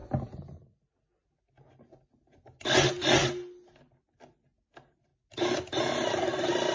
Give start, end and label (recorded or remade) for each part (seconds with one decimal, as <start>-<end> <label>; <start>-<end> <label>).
0.0-6.7 recorded